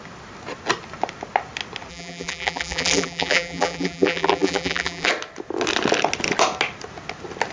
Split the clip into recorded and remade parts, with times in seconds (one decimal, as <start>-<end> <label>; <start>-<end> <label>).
0.0-1.9 recorded; 1.9-5.1 remade; 5.1-7.5 recorded